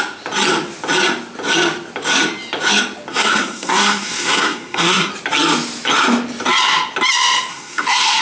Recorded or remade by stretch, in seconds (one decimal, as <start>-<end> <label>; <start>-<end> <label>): 0.0-3.1 recorded; 3.1-5.1 remade; 5.1-7.5 recorded; 7.5-8.2 remade